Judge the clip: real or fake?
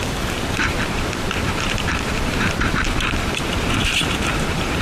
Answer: fake